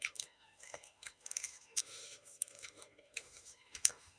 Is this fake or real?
fake